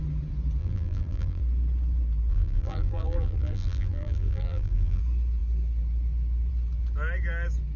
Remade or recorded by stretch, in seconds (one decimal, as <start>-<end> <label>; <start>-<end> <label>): 0.0-0.6 recorded; 0.6-1.4 remade; 1.4-2.3 recorded; 2.3-5.0 remade; 5.0-7.8 recorded